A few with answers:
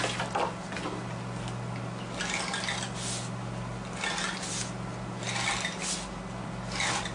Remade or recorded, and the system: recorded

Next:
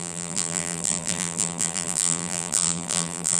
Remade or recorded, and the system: remade, vocoder, BigVGAN v2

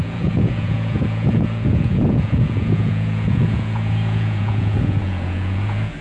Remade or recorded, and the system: remade, vocoder, Vocos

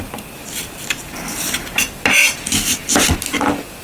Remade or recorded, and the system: recorded